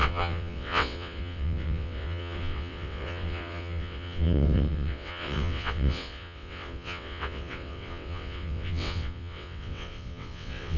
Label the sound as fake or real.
fake